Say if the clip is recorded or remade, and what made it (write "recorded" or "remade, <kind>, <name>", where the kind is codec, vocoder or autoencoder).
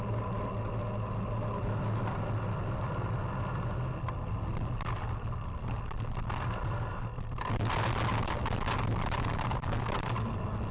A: recorded